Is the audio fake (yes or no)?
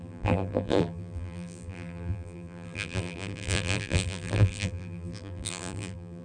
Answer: yes